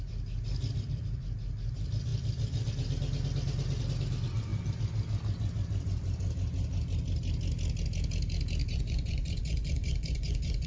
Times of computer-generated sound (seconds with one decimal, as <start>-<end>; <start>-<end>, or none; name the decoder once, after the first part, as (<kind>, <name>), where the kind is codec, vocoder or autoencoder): 8.6-10.7 (vocoder, Vocos)